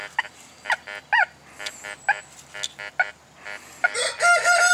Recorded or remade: recorded